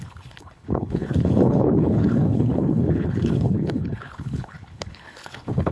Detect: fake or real fake